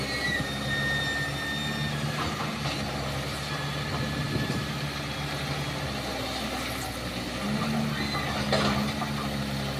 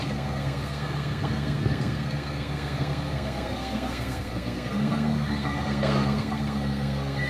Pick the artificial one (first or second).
second